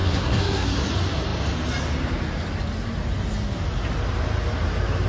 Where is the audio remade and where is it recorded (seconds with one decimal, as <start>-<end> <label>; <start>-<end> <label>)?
0.0-0.9 remade; 0.9-5.1 recorded